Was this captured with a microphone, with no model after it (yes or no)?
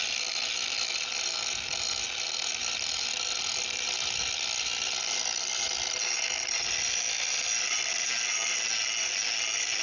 yes